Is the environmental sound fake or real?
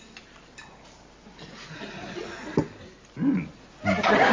real